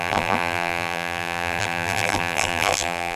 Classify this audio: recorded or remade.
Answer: remade